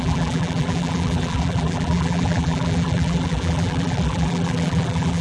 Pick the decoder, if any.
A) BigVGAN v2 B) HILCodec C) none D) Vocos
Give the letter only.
A